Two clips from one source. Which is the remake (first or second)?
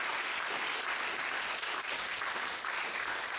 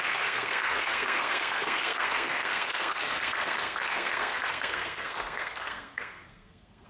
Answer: second